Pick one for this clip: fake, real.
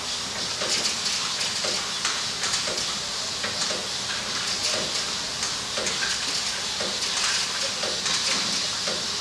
real